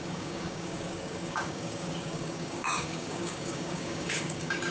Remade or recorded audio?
remade